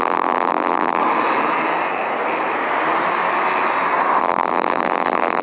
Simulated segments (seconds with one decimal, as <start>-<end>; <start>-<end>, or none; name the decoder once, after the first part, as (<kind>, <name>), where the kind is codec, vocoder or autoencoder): 0.0-1.0 (vocoder, BigVGAN v2); 4.2-5.4